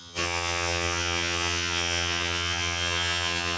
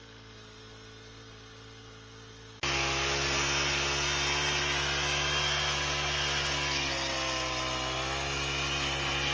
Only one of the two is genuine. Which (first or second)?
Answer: second